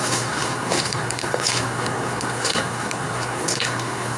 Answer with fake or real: fake